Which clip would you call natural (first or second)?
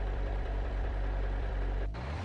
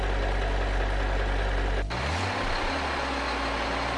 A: second